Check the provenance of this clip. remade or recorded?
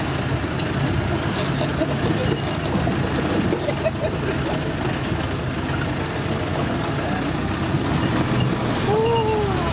recorded